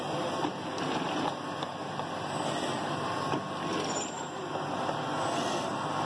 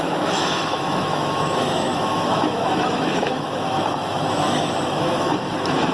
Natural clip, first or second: first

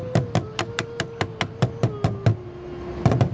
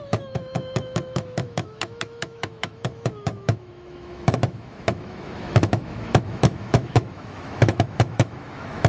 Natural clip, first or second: first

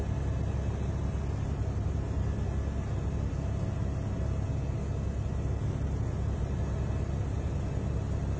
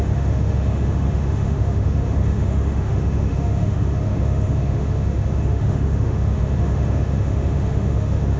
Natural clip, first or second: first